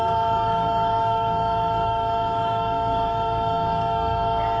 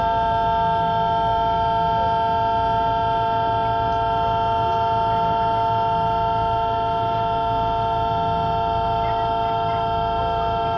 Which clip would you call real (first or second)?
second